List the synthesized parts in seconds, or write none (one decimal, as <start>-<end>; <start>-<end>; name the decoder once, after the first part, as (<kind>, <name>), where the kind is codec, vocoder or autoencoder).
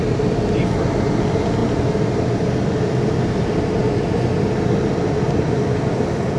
none